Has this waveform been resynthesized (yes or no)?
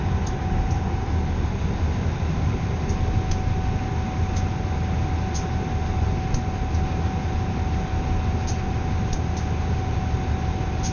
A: no